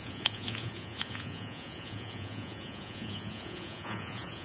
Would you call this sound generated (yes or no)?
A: yes